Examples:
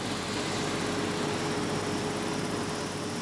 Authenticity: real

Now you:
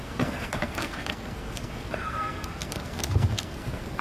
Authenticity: fake